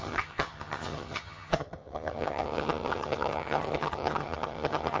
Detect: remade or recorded remade